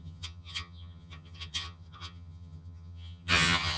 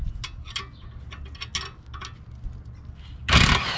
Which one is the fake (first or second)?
first